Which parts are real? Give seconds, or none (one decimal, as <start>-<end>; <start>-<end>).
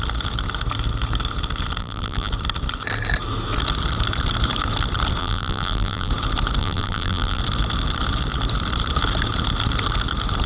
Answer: 0.0-1.8; 2.3-5.2; 6.1-6.6; 7.4-10.5